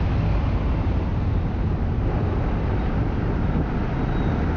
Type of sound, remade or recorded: recorded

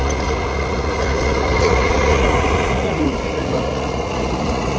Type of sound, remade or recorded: remade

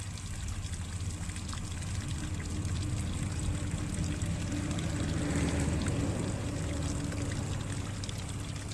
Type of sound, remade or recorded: recorded